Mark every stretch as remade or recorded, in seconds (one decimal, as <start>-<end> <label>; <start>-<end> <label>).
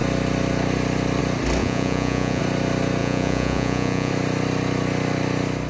0.0-1.6 recorded; 1.6-2.4 remade; 2.4-3.0 recorded; 3.0-4.1 remade; 4.1-5.7 recorded